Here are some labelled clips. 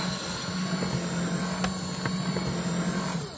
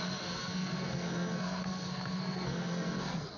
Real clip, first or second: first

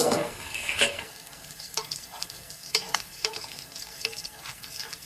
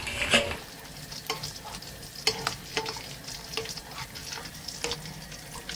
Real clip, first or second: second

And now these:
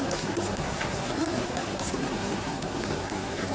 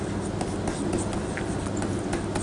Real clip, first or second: second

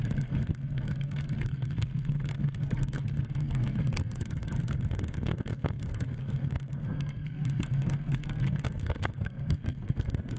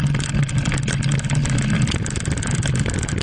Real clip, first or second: second